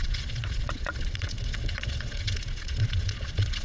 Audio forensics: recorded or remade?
remade